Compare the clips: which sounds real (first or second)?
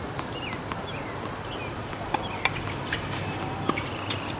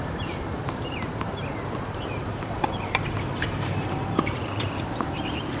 first